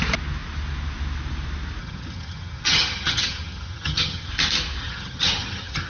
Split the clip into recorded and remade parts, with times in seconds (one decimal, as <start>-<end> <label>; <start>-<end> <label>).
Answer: 0.0-1.8 recorded; 1.8-4.3 remade; 4.3-4.8 recorded; 4.8-5.9 remade